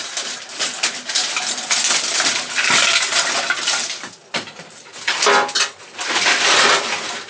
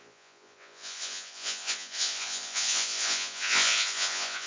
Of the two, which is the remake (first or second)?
second